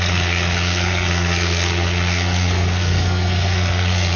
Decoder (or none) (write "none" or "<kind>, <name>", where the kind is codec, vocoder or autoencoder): codec, SNAC